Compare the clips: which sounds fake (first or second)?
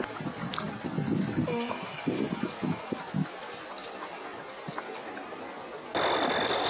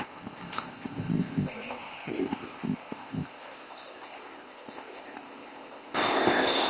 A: second